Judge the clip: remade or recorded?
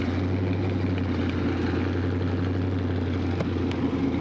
recorded